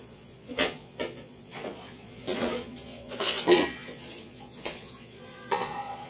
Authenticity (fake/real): fake